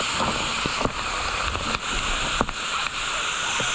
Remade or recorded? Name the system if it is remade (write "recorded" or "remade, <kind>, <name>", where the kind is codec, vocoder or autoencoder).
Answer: recorded